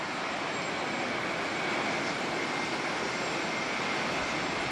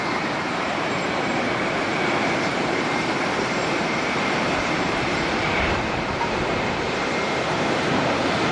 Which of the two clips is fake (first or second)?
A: second